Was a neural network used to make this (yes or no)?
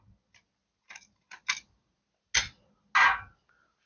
no